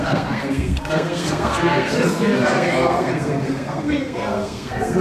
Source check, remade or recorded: remade